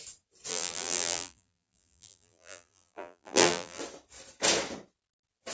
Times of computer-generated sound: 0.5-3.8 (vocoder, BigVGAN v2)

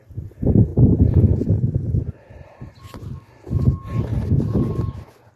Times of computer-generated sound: 0.7-2.7 (vocoder, BigVGAN v2); 4.1-4.8

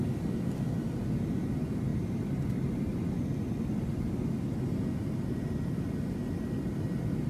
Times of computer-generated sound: none

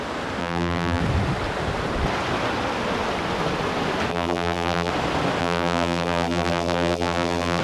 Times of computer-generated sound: 0.4-1.0 (vocoder, BigVGAN v2); 4.1-4.9; 5.4-7.6

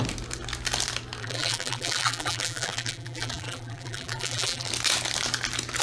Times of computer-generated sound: 1.2-4.7 (vocoder, BigVGAN v2)

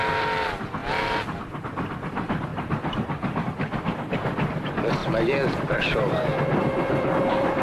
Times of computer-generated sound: 2.5-3.4 (vocoder, BigVGAN v2); 5.0-7.6